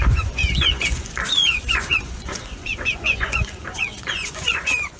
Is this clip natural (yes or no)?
no